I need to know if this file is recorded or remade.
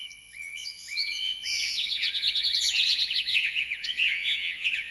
remade